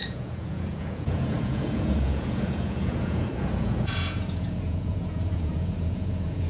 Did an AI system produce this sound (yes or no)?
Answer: yes